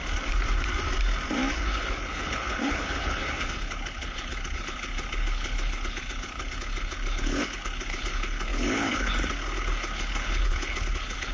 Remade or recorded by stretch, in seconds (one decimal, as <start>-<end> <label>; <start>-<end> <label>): 0.0-1.5 recorded; 1.5-11.3 remade